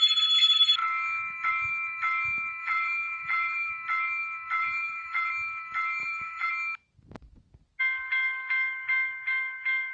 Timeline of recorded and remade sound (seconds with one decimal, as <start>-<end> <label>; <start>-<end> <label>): 0.0-2.6 recorded; 2.6-3.7 remade; 3.7-4.6 recorded; 4.6-5.3 remade; 5.3-6.0 recorded; 6.0-6.5 remade; 6.5-9.9 recorded